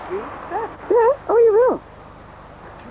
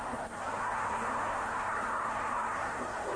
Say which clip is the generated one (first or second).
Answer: second